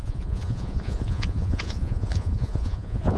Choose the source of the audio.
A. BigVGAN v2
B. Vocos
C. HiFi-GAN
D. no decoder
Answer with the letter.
B